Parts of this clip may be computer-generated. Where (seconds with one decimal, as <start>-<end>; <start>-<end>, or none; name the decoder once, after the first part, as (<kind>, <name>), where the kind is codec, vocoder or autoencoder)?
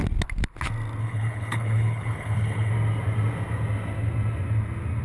1.0-2.7 (codec, HILCodec)